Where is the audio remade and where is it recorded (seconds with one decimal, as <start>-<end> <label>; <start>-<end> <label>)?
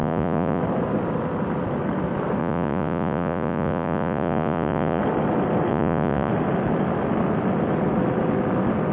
0.0-0.6 remade; 0.6-2.4 recorded; 2.4-5.0 remade; 5.0-5.7 recorded; 5.7-6.3 remade; 6.3-8.9 recorded